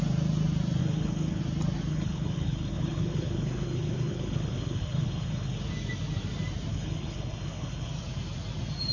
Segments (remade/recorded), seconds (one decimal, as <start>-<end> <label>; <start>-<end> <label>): 0.0-0.8 recorded; 0.8-1.4 remade; 1.4-1.9 recorded; 1.9-5.6 remade; 5.6-6.7 recorded; 6.7-7.9 remade; 7.9-8.9 recorded